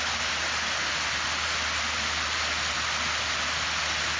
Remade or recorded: recorded